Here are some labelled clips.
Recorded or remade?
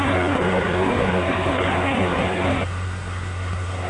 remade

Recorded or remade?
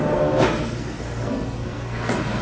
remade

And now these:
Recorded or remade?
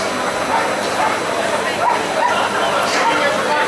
recorded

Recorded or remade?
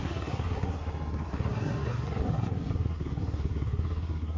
remade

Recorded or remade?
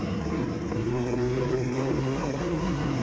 remade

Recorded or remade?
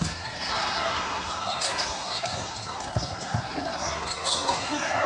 remade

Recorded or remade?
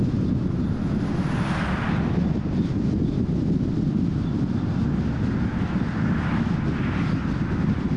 recorded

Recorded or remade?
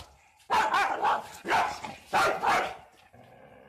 recorded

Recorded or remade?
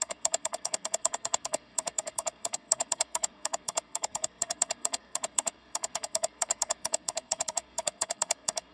remade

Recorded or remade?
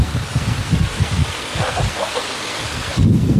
remade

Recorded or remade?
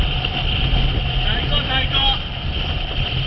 recorded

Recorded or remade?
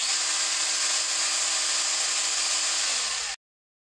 recorded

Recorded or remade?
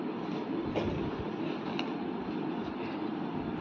recorded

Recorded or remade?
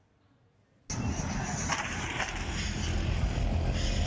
recorded